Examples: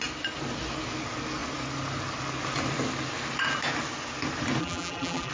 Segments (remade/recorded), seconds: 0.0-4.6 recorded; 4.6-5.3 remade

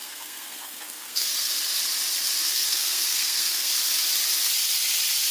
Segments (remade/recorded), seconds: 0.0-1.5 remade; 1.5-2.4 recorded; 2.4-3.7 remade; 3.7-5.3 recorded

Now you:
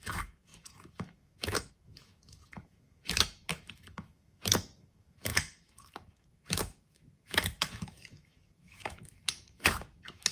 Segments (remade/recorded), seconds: 0.0-10.3 remade

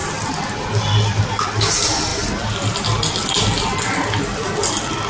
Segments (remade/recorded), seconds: 0.0-5.1 recorded

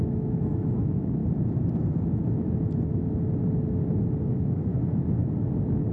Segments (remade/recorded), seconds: 0.0-1.2 remade; 1.2-4.2 recorded; 4.2-4.7 remade; 4.7-5.9 recorded

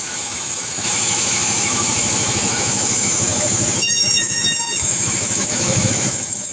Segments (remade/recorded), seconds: 0.0-6.5 remade